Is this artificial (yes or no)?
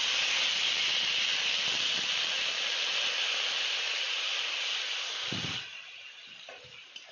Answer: no